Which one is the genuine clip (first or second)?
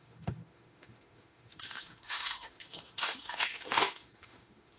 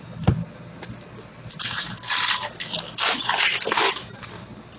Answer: second